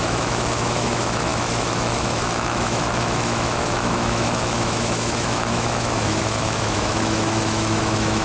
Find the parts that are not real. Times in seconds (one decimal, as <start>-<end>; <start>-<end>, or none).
0.0-8.2